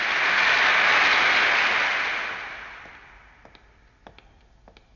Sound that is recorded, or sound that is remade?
recorded